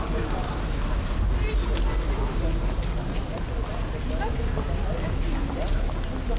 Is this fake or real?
real